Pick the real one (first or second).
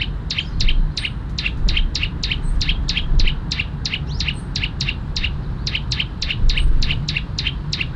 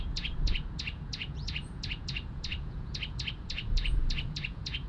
first